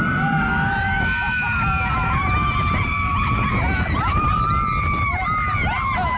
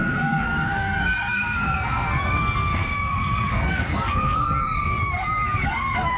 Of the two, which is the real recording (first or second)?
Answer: first